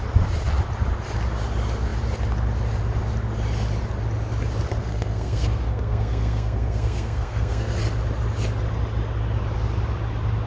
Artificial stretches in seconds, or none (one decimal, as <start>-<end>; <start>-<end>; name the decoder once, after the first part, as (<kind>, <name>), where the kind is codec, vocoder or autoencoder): 4.8-7.8 (codec, SNAC)